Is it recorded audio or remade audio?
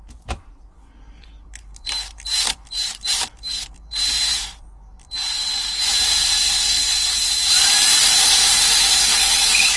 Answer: remade